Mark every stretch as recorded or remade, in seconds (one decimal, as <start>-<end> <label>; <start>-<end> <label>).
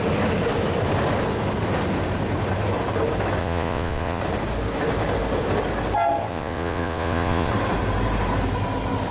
0.0-3.4 recorded; 3.4-4.2 remade; 4.2-6.3 recorded; 6.3-7.5 remade; 7.5-9.1 recorded